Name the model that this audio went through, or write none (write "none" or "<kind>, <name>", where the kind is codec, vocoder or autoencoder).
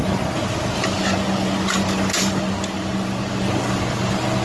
none